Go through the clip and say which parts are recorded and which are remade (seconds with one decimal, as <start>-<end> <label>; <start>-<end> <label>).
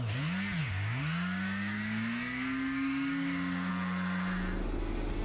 0.0-0.6 recorded; 0.6-3.7 remade; 3.7-5.2 recorded